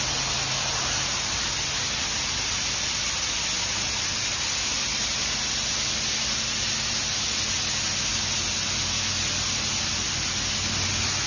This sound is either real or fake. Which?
real